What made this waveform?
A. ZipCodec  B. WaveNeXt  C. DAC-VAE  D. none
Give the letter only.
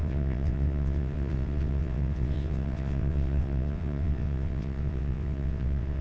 B